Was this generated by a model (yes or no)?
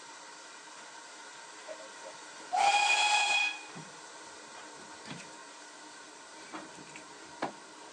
yes